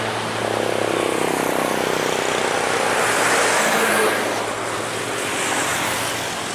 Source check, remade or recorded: recorded